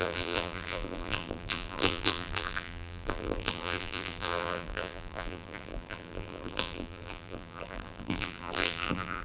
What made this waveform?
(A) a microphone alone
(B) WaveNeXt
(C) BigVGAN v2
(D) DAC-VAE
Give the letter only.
C